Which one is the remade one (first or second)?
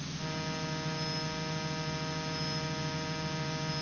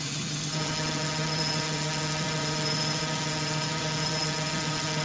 second